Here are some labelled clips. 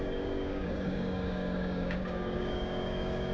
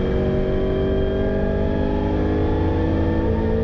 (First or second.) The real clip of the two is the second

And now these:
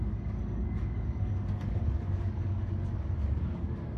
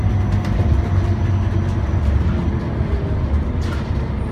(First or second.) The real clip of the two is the second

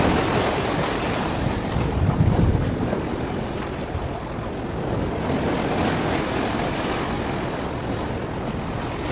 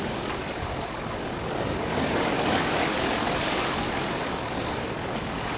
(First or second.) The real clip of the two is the first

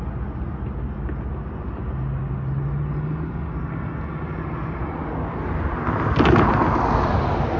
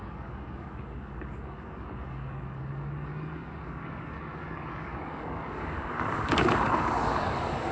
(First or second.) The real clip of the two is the first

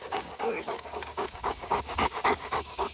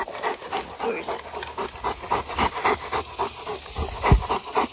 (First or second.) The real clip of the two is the second